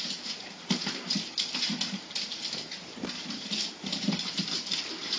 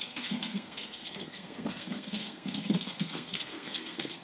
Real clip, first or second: first